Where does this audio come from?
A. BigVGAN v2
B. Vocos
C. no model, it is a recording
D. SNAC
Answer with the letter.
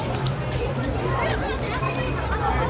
A